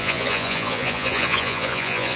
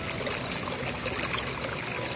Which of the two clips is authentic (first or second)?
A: second